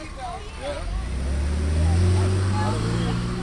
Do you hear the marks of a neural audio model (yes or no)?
no